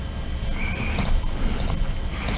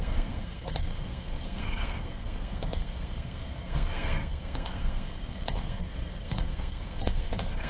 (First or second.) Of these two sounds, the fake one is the second